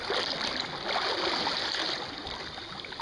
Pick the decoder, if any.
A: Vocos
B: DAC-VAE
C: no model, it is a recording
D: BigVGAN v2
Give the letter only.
C